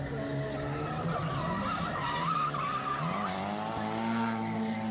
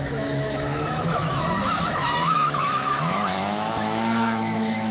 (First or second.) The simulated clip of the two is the second